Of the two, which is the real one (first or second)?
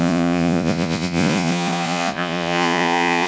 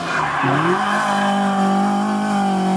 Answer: second